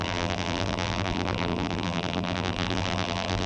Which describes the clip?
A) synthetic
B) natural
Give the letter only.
A